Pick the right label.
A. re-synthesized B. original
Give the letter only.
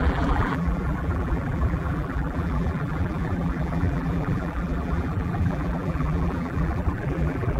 A